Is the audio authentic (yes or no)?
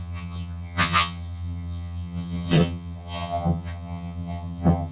no